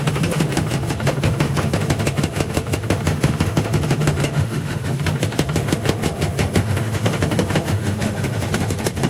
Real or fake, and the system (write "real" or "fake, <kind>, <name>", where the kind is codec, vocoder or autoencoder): fake, autoencoder, DAC-VAE